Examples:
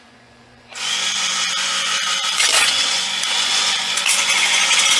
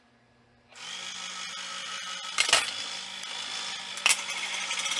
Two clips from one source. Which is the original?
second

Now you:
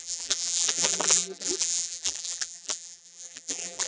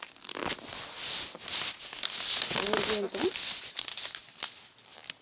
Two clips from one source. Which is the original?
second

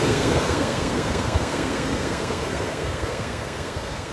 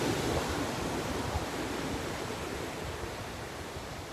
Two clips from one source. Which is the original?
second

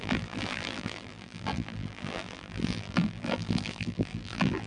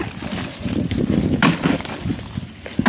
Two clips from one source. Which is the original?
second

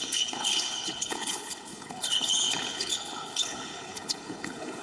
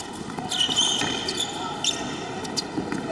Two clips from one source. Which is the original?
second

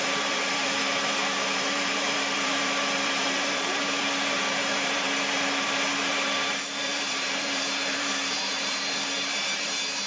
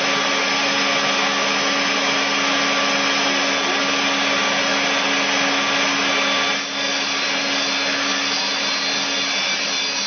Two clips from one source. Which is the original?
second